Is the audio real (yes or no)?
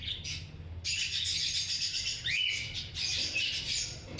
yes